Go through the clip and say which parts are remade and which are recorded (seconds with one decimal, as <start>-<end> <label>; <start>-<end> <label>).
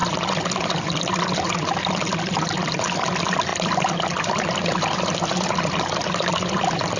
0.0-7.0 recorded